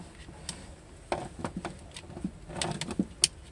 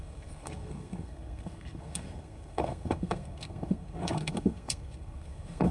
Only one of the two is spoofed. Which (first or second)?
second